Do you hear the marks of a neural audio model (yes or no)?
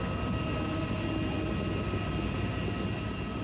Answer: no